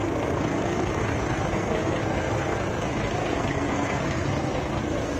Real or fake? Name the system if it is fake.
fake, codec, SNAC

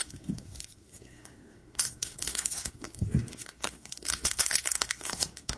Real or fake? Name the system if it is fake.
fake, codec, SNAC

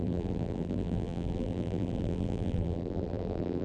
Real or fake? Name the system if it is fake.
fake, vocoder, BigVGAN v2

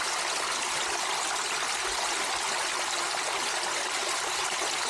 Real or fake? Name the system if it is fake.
real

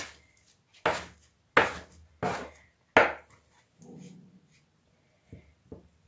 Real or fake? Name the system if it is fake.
real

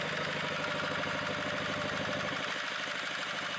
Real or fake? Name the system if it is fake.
real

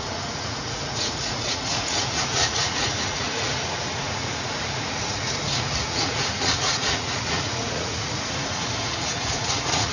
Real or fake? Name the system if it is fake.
fake, vocoder, Vocos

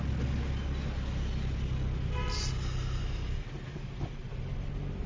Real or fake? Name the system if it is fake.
real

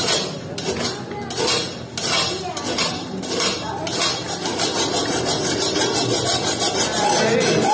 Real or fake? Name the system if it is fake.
real